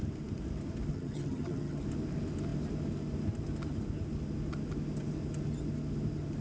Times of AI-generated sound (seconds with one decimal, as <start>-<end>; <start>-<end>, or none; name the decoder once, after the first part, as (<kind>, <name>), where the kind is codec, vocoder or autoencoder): 0.9-1.8 (vocoder, HiFi-GAN)

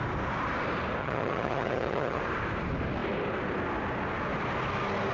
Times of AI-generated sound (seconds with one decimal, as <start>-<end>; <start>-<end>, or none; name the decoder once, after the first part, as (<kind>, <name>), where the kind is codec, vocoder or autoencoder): 1.0-2.2 (vocoder, HiFi-GAN)

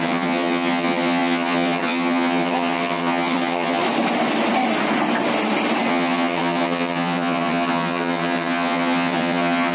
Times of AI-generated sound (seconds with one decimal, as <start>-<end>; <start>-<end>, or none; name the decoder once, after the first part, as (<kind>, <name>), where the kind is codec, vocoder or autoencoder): 0.0-3.8 (vocoder, HiFi-GAN); 5.9-9.7

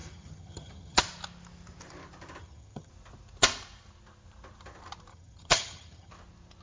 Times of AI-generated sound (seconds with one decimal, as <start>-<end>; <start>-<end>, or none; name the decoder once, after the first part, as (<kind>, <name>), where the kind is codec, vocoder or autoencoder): 0.0-1.0 (vocoder, HiFi-GAN); 2.4-2.9; 5.1-6.1

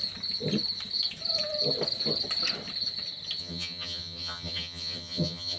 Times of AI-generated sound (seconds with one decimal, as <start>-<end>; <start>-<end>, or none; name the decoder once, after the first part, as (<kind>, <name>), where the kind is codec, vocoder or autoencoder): 3.4-5.6 (vocoder, HiFi-GAN)